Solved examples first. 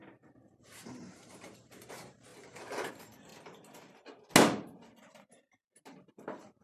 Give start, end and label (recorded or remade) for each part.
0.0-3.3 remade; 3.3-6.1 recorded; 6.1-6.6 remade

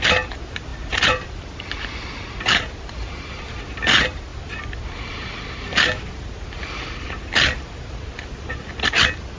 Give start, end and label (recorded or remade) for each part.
0.0-9.4 recorded

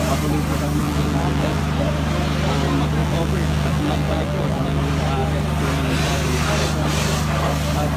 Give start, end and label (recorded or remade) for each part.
0.0-0.8 recorded; 0.8-1.6 remade; 1.6-3.0 recorded; 3.0-4.8 remade; 4.8-8.0 recorded

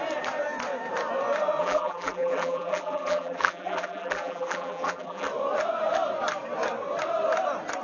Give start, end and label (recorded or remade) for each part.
0.0-1.6 recorded; 1.6-5.3 remade; 5.3-7.8 recorded

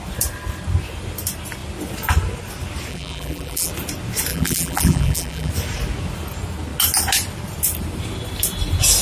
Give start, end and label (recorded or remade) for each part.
0.0-2.9 recorded; 2.9-3.7 remade; 3.7-4.3 recorded; 4.3-5.5 remade; 5.5-9.0 recorded

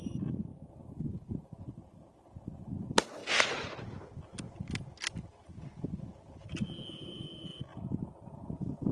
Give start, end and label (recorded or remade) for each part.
0.0-0.5 recorded; 0.5-1.0 remade; 1.0-8.9 recorded

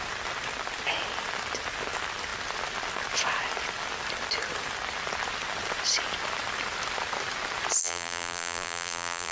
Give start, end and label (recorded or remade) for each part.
0.0-7.8 recorded; 7.8-9.3 remade

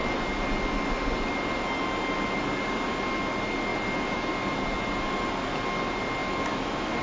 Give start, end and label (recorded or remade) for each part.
0.0-7.0 recorded